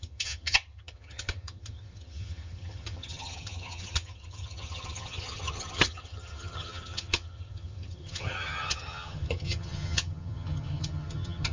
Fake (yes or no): yes